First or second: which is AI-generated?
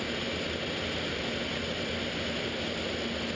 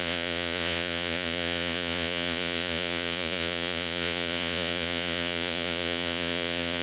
second